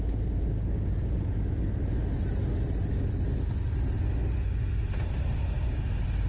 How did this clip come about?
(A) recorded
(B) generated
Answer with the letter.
A